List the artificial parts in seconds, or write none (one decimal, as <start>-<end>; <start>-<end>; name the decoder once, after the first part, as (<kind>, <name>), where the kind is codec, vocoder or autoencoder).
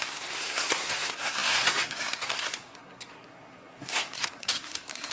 0.0-5.1 (codec, SNAC)